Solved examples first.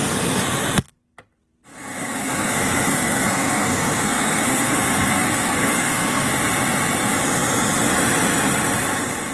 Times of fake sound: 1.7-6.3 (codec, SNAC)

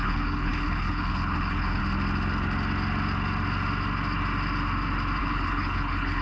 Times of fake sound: 0.0-1.8 (codec, HILCodec); 5.2-6.2

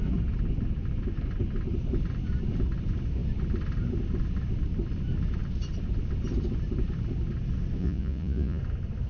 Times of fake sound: 7.8-8.6 (vocoder, Vocos)

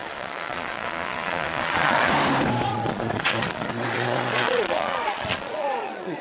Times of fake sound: 0.0-2.1 (vocoder, Vocos); 2.7-6.2